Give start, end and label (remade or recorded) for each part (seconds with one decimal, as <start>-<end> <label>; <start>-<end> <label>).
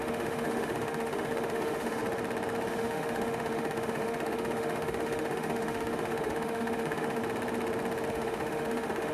0.0-2.0 remade; 2.0-2.7 recorded; 2.7-7.2 remade; 7.2-8.1 recorded; 8.1-9.1 remade